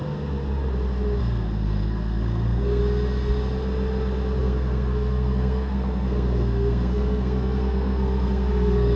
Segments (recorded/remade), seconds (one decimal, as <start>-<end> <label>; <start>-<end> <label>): 0.0-1.2 recorded; 1.2-2.8 remade; 2.8-4.4 recorded; 4.4-9.0 remade